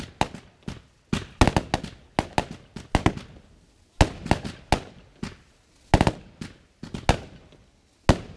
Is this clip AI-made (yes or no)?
no